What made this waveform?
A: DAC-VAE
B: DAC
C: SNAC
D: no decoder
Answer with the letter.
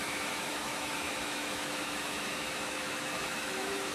A